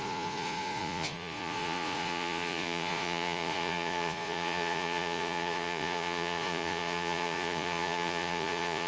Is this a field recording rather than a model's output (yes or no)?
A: no